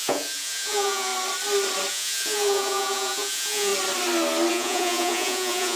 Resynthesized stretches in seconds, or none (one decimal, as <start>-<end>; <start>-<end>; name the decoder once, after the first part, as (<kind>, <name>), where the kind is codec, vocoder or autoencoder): 0.0-1.1 (vocoder, Vocos); 1.9-3.7; 4.5-5.8